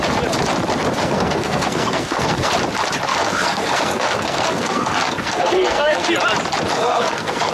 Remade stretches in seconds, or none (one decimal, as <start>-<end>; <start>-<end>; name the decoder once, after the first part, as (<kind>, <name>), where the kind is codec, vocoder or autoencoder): 1.0-2.5 (codec, SNAC); 3.1-6.1; 6.7-7.5